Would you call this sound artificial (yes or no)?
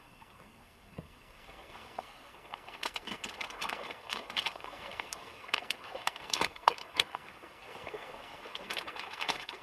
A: yes